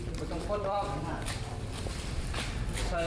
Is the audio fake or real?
fake